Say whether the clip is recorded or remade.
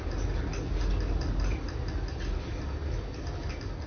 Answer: recorded